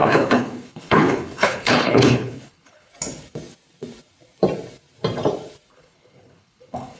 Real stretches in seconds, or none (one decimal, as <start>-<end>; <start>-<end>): 2.9-5.7